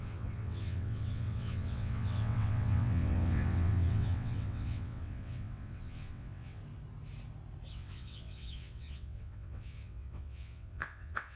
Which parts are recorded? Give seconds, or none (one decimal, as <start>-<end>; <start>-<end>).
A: 6.6-7.7